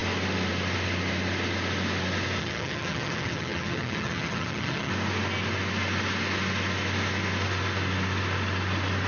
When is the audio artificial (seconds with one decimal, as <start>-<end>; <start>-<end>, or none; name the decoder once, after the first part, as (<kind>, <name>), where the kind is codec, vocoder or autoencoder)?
2.4-4.9 (vocoder, HiFi-GAN)